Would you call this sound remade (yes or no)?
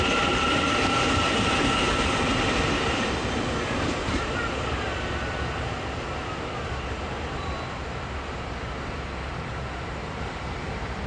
yes